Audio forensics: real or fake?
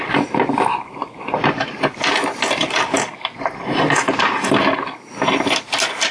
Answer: fake